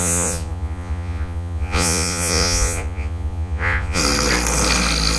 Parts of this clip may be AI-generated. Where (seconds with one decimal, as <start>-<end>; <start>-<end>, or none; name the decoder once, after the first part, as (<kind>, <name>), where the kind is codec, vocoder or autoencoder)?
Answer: 0.0-4.0 (vocoder, Vocos)